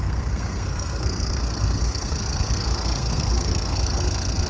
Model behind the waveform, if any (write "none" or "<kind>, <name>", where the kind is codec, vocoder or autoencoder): codec, SNAC